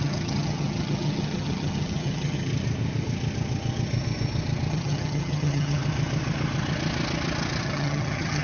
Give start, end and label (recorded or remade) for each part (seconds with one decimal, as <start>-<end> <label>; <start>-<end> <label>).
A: 0.0-2.5 remade; 2.5-4.7 recorded; 4.7-5.8 remade; 5.8-7.6 recorded; 7.6-8.4 remade